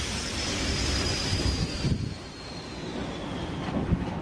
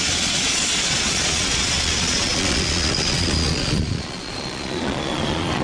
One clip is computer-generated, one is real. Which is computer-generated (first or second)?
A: second